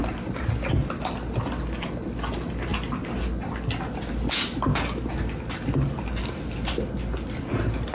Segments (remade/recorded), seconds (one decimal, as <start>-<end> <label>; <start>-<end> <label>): 0.0-7.9 recorded